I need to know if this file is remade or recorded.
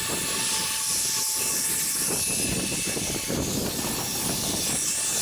recorded